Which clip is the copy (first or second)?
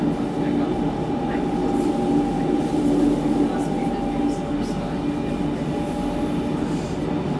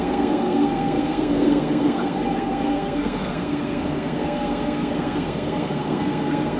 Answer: second